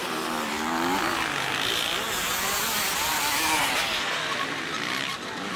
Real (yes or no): yes